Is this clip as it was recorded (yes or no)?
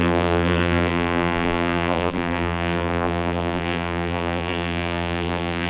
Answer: no